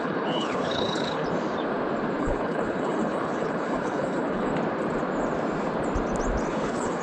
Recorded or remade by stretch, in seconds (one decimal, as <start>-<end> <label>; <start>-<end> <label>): 0.0-1.2 remade; 1.2-2.2 recorded; 2.2-4.5 remade; 4.5-6.5 recorded; 6.5-7.0 remade